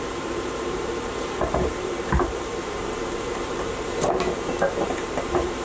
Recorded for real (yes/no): no